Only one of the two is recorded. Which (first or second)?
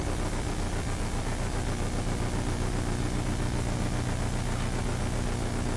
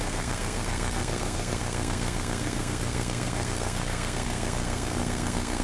first